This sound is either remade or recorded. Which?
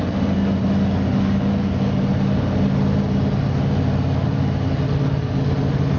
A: recorded